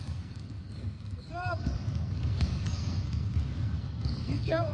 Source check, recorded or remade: remade